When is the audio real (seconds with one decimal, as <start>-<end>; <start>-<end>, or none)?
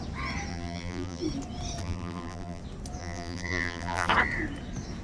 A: 0.0-0.5; 1.2-1.8; 2.6-3.0; 4.1-5.0